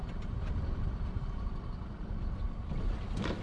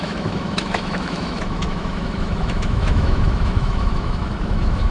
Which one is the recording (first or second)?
first